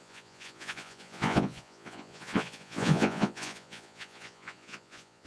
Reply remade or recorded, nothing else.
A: remade